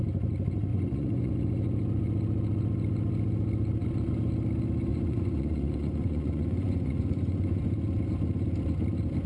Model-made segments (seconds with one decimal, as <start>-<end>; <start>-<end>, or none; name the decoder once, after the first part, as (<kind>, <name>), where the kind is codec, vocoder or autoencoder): 0.7-1.3 (vocoder, Vocos); 4.9-7.6